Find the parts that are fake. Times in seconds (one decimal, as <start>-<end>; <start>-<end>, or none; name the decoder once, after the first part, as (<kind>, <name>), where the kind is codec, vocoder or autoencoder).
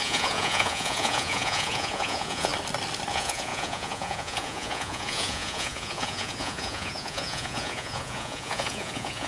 0.0-2.5 (vocoder, Vocos); 3.1-9.3